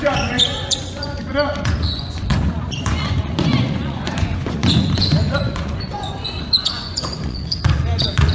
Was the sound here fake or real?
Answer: fake